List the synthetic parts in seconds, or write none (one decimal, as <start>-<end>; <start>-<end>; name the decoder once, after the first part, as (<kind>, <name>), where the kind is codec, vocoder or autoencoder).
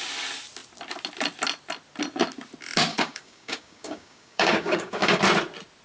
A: 2.9-5.2 (codec, DAC)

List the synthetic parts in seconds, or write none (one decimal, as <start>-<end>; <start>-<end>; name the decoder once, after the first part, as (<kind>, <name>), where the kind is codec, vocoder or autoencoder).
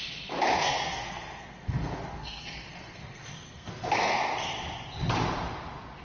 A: 0.6-4.2 (codec, SNAC)